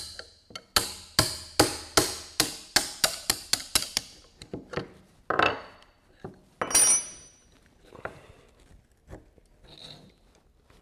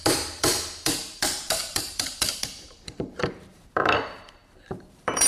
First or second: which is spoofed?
second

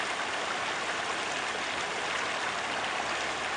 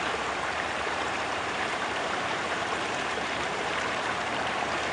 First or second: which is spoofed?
second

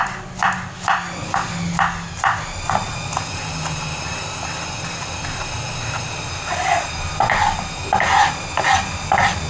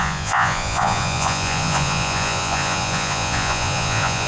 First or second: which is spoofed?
second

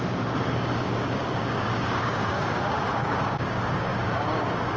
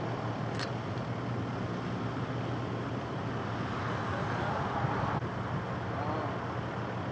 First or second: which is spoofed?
first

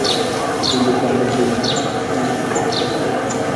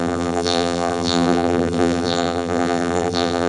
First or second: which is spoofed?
second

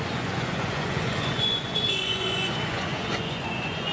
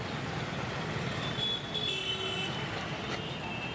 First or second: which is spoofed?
first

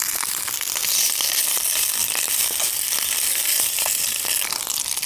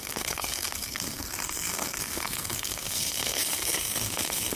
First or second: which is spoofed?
second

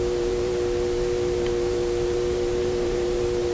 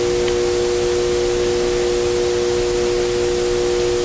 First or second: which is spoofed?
first